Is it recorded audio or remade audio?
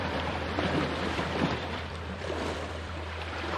remade